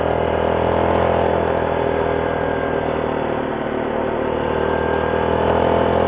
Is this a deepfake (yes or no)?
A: no